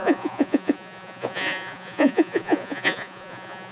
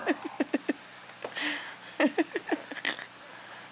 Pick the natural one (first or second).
second